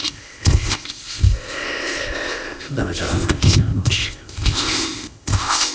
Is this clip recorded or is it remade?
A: remade